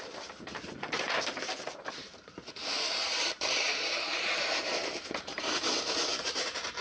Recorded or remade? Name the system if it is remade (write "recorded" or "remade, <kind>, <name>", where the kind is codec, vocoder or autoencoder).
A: remade, vocoder, BigVGAN v2